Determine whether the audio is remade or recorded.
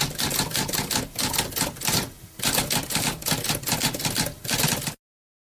recorded